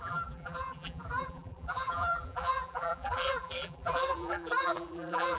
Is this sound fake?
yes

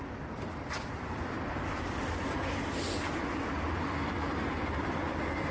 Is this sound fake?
yes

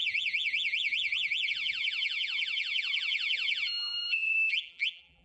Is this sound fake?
yes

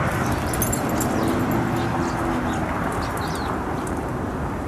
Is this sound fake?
no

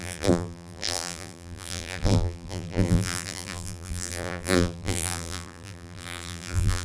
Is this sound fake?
yes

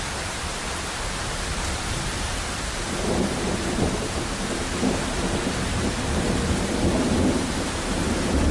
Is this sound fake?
yes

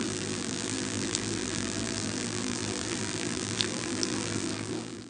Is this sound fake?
yes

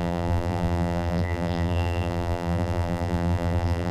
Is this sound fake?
yes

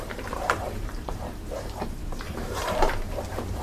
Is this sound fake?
yes